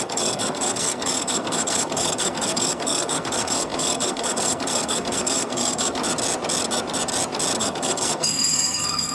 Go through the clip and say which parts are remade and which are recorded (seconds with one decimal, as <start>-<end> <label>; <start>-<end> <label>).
0.0-6.0 remade; 6.0-7.6 recorded; 7.6-9.1 remade